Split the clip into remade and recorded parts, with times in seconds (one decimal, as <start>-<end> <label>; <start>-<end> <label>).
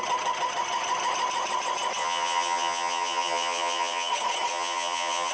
0.0-2.0 recorded; 2.0-4.1 remade; 4.1-4.5 recorded; 4.5-5.3 remade